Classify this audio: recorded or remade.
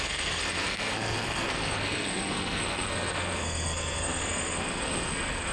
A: remade